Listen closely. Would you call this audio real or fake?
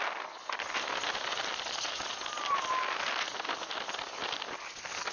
real